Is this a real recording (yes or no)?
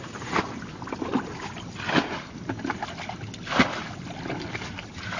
yes